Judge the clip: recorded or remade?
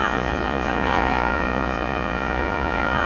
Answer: remade